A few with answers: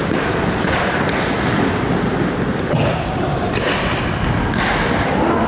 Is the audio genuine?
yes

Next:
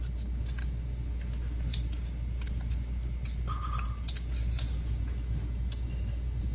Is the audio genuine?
yes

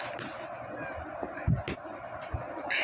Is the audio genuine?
yes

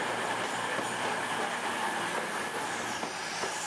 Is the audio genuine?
yes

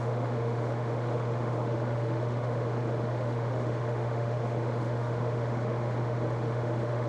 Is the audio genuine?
no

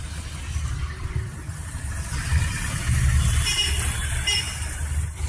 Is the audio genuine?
yes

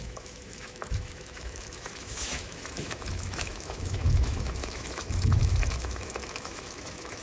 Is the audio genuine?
no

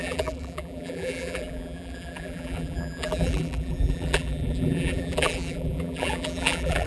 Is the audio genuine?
no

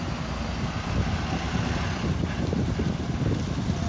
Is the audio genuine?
yes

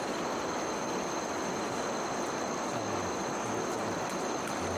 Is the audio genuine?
yes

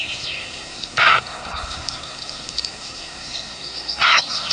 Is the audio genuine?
no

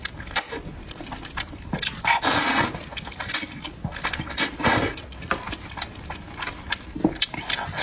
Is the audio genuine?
yes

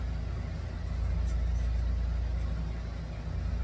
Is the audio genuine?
yes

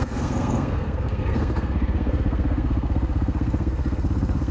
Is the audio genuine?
no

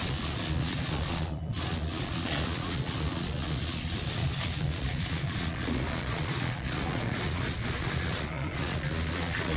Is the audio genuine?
no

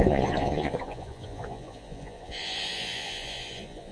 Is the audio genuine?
no